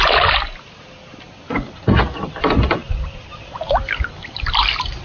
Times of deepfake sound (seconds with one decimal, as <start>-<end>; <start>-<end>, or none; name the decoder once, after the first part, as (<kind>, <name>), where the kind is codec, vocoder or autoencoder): none